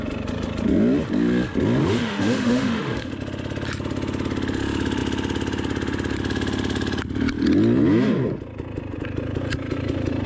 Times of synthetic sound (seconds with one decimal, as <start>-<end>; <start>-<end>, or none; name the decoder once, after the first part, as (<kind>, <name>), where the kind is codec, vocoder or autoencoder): 1.8-3.1 (autoencoder, DAC-VAE)